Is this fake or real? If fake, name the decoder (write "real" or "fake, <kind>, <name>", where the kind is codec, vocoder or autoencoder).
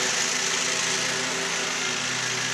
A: real